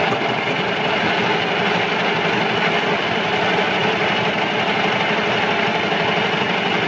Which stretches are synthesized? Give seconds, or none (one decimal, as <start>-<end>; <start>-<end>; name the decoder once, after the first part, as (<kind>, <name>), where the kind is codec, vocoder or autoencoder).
0.0-3.8 (vocoder, BigVGAN v2); 5.6-6.9